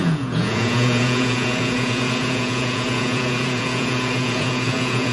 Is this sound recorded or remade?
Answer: remade